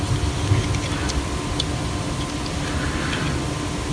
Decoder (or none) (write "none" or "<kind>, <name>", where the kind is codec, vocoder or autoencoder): none